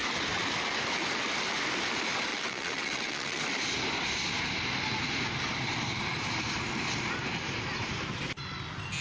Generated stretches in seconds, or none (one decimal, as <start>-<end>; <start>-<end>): 2.3-3.4